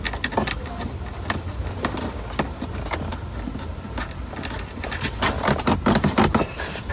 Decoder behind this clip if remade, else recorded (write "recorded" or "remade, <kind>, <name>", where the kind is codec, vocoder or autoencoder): recorded